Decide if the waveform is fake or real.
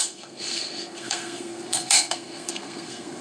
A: fake